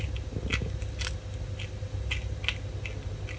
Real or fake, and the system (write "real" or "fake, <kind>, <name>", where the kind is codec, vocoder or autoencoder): real